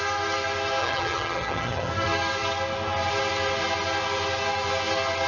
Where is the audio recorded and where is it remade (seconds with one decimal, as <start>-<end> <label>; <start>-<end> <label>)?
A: 0.0-0.8 recorded; 0.8-1.9 remade; 1.9-5.3 recorded